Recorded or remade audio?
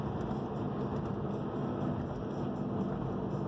recorded